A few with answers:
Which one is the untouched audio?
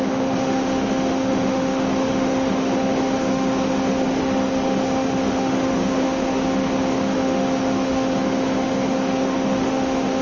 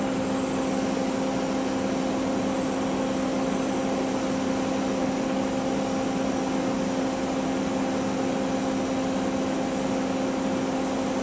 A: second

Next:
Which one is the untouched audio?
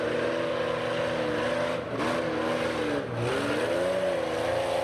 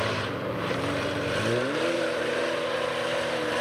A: first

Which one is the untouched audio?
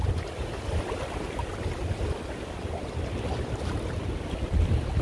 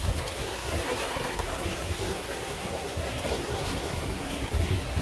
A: first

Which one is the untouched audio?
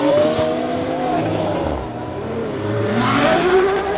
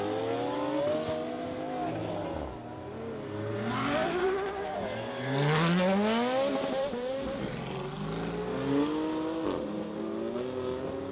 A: second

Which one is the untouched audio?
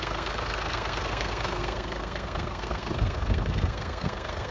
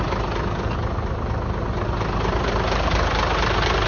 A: second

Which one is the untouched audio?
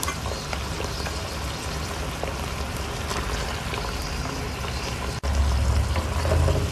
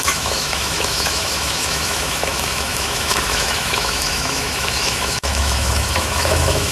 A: first